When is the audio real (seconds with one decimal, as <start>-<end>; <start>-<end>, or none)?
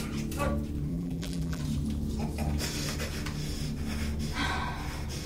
0.0-0.9; 1.6-5.3